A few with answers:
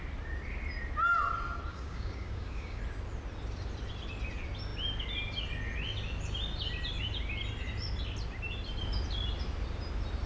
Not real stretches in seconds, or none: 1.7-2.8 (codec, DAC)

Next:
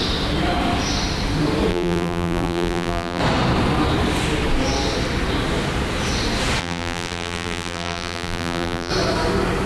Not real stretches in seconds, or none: 1.7-3.2 (vocoder, BigVGAN v2); 6.6-8.9

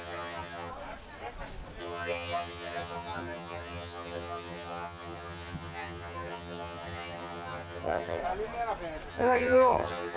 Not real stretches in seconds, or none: 0.0-0.7 (vocoder, HiFi-GAN); 1.8-8.2; 9.1-10.2